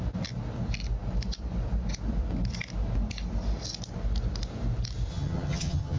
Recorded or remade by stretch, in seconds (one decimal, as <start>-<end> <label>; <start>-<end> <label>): 0.0-5.1 recorded; 5.1-6.0 remade